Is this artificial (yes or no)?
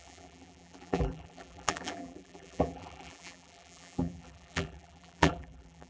yes